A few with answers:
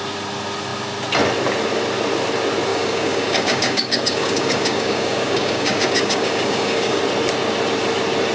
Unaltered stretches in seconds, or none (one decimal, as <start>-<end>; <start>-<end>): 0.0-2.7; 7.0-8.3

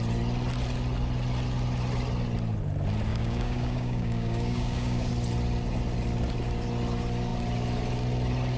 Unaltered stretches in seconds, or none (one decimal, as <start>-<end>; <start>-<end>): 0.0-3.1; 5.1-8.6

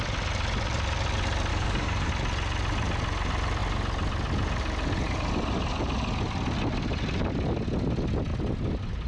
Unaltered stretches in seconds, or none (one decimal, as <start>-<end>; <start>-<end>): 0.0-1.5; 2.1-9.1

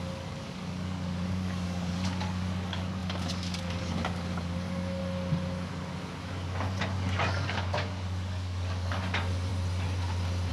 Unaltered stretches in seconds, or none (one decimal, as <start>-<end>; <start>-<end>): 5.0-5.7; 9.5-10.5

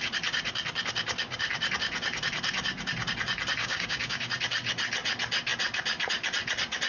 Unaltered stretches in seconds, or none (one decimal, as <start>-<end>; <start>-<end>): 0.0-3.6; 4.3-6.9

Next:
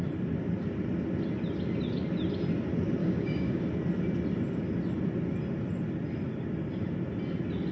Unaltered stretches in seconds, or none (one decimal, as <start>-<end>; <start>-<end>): 0.0-3.0; 3.6-7.7

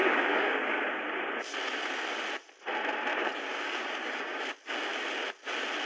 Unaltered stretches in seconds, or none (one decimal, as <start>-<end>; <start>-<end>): 0.9-3.1; 4.4-5.9